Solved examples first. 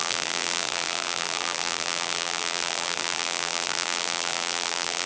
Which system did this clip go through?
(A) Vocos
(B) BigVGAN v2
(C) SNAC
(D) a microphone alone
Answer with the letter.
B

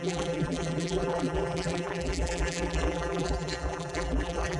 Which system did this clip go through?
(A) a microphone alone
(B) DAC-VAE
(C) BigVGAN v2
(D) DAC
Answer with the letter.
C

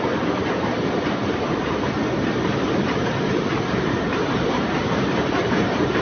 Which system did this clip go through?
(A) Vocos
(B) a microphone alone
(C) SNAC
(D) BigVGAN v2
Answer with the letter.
D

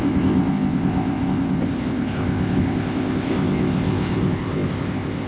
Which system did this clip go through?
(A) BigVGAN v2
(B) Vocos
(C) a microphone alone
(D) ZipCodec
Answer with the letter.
D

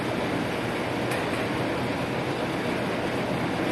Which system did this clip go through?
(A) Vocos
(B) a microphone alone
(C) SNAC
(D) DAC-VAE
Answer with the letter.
B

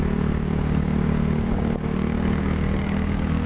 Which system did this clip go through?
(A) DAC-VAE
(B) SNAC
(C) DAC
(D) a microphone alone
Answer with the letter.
C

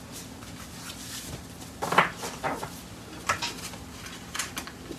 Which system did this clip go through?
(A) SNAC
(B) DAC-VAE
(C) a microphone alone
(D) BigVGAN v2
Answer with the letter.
C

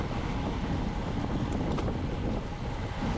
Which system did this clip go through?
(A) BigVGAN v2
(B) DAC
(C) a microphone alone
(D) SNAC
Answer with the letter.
C